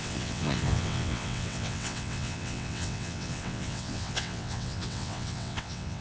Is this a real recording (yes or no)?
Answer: no